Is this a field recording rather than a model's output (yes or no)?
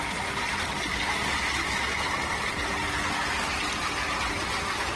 yes